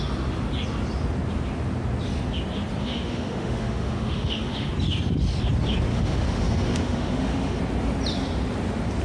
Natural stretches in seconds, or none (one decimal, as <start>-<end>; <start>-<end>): 0.0-2.8; 4.7-5.9; 7.6-9.0